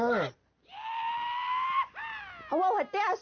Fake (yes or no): no